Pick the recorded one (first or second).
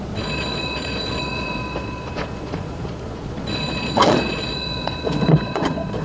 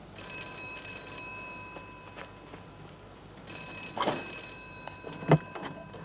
second